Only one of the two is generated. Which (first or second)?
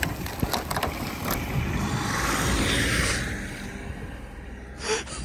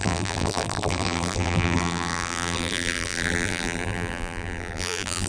second